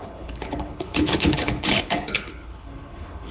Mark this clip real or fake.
fake